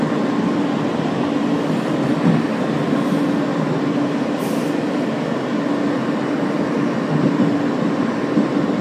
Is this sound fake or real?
real